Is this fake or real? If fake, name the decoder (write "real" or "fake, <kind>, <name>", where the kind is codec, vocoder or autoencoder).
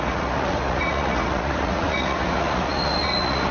fake, vocoder, Vocos